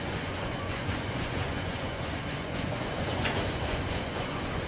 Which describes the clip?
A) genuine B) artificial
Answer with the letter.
B